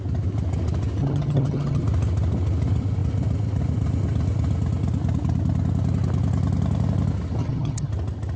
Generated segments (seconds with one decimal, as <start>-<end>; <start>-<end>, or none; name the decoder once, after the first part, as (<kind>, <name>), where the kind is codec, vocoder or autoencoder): 1.0-1.8 (vocoder, HiFi-GAN); 7.4-7.9